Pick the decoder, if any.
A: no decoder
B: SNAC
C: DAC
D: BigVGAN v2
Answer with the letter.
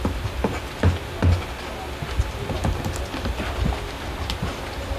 A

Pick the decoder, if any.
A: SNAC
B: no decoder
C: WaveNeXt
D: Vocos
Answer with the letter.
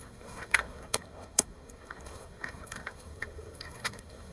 A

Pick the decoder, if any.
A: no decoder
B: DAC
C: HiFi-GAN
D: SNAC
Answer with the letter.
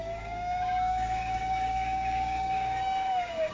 B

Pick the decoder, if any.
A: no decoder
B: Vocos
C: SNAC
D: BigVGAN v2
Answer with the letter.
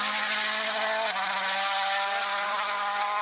A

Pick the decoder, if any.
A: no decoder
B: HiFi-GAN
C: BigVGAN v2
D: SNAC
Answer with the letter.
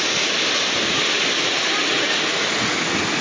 A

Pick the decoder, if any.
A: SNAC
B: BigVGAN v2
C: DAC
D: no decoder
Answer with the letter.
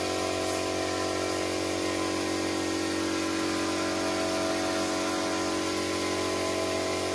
D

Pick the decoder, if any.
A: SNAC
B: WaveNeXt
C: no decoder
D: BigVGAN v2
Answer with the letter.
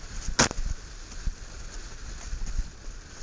C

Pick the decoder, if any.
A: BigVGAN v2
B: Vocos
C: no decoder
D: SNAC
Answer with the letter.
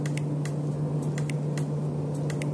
C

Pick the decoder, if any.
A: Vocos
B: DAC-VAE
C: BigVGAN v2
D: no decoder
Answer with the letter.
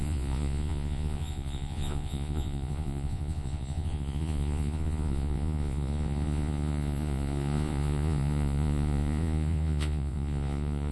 A